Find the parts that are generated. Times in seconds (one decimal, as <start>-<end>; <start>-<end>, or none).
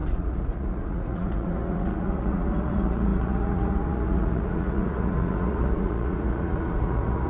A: 0.0-7.3